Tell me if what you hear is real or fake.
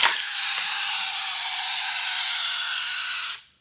real